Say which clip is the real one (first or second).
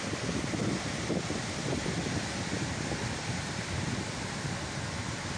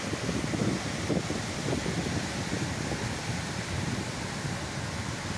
second